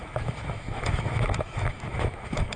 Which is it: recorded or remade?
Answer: remade